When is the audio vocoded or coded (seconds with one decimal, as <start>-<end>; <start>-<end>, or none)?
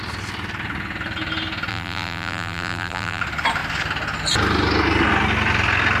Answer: 1.7-3.2